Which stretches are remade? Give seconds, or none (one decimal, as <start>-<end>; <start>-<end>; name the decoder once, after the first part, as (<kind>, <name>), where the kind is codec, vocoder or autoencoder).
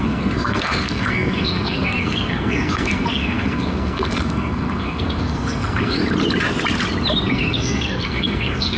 0.0-6.0 (codec, SNAC); 7.3-8.8